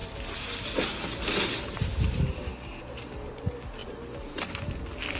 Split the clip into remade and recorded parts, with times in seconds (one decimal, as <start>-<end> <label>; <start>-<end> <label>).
0.0-3.8 recorded; 3.8-4.5 remade; 4.5-5.2 recorded